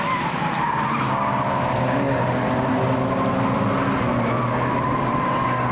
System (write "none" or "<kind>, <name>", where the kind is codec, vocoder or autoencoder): none